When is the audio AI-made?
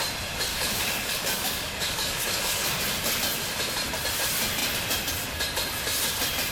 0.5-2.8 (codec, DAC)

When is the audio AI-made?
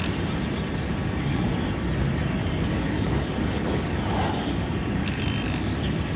1.0-1.5 (codec, DAC); 2.4-5.2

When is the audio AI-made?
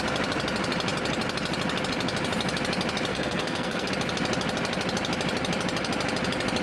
3.1-3.9 (codec, SNAC)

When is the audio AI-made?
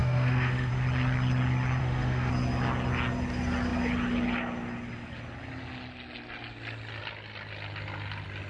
0.0-0.7 (autoencoder, DAC-VAE); 1.8-2.3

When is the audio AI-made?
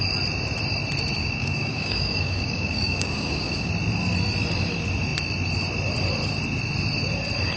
1.2-3.7 (codec, DAC)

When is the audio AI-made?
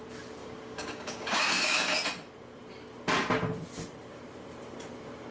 0.4-1.9 (codec, DAC)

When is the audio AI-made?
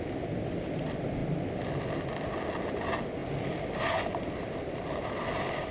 none